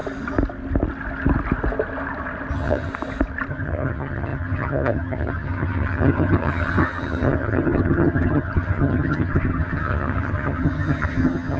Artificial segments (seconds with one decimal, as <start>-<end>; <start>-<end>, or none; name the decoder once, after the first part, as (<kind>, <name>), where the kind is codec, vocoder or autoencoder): 2.5-2.9 (vocoder, HiFi-GAN); 3.5-11.6